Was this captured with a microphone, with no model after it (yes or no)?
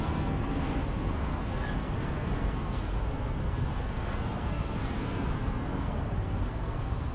no